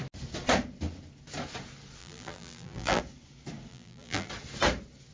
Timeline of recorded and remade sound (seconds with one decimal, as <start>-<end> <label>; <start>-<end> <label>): 0.0-2.0 recorded; 2.0-3.0 remade; 3.0-3.7 recorded; 3.7-4.3 remade; 4.3-5.1 recorded